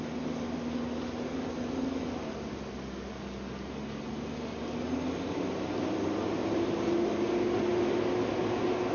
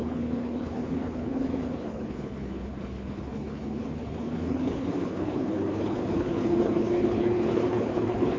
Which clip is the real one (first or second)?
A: first